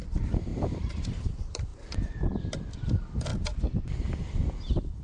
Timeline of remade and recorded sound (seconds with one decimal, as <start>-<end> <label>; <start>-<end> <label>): 0.0-3.3 remade; 3.3-4.5 recorded; 4.5-5.0 remade